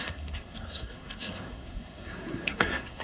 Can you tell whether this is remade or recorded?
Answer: remade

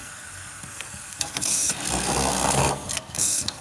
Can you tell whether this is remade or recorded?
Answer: remade